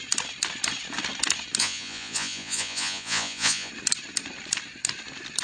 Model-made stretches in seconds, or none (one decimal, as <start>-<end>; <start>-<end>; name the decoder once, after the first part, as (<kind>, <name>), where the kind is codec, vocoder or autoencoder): 1.6-3.7 (vocoder, Vocos)